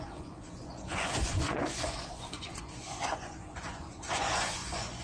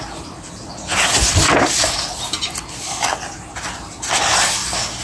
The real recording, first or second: second